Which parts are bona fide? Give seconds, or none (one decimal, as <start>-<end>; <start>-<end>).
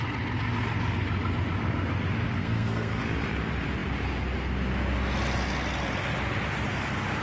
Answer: 0.0-2.4; 3.0-7.2